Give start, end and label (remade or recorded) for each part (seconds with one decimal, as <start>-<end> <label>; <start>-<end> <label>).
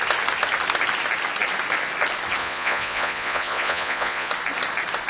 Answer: 0.0-2.4 recorded; 2.4-4.3 remade; 4.3-5.1 recorded